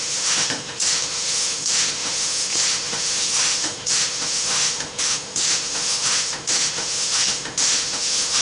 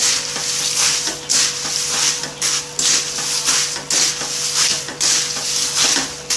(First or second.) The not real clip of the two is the first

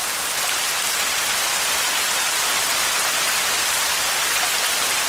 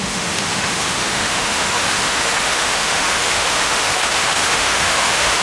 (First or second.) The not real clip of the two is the second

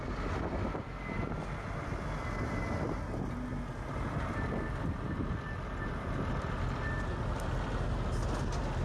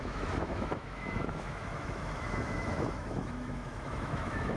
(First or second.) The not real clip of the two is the second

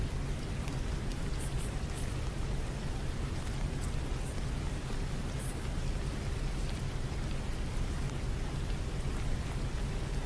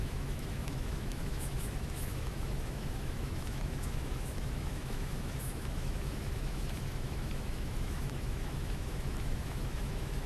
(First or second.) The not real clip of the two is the second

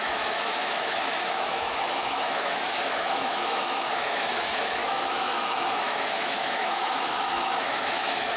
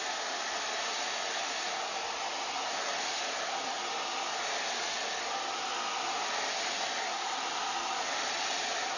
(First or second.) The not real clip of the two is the first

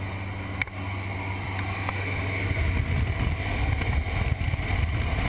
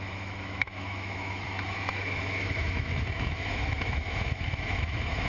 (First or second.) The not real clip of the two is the second